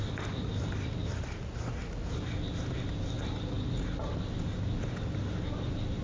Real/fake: real